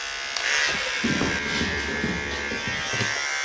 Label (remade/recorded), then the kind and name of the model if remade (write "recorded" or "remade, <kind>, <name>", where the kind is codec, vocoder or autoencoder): recorded